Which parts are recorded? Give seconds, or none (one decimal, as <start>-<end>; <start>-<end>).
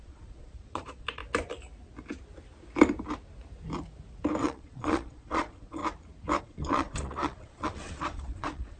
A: 1.2-4.4; 5.8-6.4